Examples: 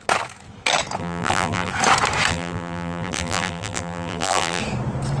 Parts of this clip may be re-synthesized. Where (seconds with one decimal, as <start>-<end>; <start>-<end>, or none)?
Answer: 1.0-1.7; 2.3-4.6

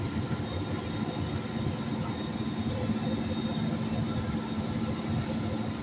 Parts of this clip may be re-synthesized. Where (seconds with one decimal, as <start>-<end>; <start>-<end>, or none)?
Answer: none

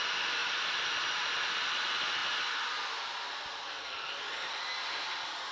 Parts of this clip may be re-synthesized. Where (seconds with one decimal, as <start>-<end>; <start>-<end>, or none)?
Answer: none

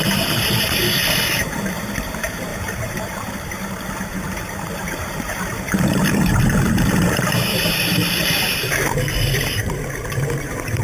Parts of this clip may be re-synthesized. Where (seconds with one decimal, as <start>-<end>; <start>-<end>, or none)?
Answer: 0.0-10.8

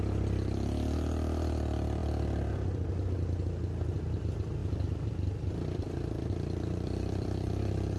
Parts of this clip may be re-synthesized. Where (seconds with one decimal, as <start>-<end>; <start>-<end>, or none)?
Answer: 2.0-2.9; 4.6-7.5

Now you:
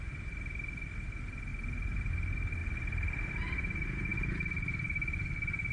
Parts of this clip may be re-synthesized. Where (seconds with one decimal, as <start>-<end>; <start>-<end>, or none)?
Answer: 0.0-1.5; 2.1-2.6; 3.3-5.7

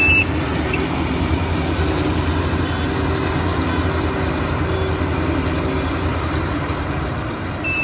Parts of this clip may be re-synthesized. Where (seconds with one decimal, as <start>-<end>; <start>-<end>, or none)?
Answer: 0.0-2.5; 6.1-7.8